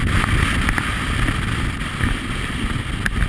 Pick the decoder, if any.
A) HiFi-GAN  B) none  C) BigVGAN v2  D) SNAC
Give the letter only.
B